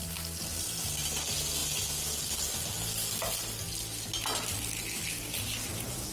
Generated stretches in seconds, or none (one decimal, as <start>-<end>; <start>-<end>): none